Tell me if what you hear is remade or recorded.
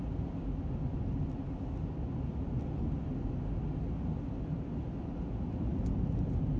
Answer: recorded